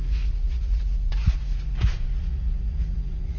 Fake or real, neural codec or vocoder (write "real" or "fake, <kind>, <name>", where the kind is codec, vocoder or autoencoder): fake, vocoder, Vocos